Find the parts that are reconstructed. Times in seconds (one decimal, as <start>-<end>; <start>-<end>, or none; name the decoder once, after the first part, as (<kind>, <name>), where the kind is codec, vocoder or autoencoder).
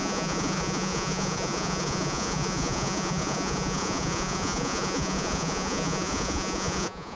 0.0-7.2 (vocoder, Vocos)